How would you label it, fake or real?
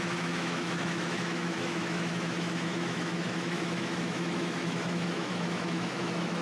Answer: fake